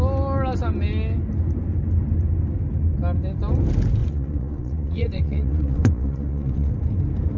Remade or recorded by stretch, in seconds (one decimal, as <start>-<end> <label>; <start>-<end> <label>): 0.0-4.0 recorded; 4.0-6.7 remade; 6.7-7.4 recorded